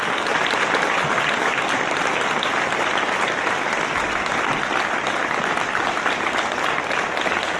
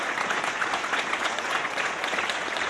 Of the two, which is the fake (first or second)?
second